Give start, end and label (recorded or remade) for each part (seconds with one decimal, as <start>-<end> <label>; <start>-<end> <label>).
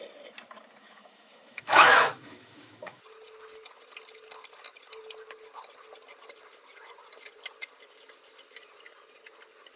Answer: 0.0-0.8 recorded; 0.8-3.0 remade; 3.0-9.8 recorded